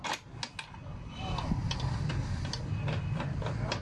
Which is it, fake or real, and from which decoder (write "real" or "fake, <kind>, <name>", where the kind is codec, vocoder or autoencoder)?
real